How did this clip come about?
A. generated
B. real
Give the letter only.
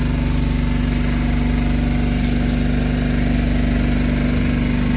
B